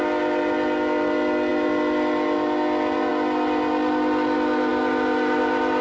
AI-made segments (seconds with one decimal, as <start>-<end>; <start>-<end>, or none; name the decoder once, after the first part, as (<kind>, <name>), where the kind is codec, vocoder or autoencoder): none